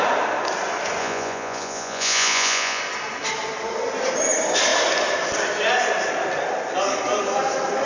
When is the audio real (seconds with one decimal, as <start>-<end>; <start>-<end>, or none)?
0.0-1.0; 2.8-7.8

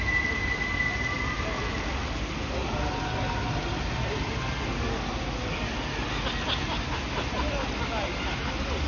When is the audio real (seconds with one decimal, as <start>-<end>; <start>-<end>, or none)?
0.0-8.9

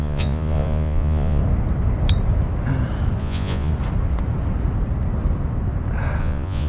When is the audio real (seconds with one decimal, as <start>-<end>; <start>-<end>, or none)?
1.4-3.2; 3.7-6.2

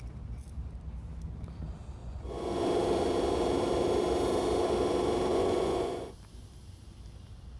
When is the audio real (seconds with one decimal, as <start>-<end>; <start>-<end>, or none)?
0.0-2.0; 2.6-5.3; 6.1-7.6